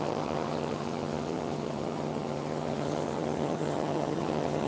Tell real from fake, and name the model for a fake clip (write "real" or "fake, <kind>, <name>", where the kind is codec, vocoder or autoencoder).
fake, vocoder, HiFi-GAN